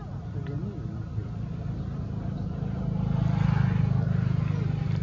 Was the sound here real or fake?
real